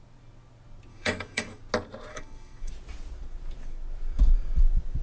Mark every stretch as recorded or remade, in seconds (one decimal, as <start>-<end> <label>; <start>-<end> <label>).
0.0-0.9 recorded; 0.9-1.6 remade; 1.6-2.1 recorded; 2.1-2.7 remade; 2.7-5.0 recorded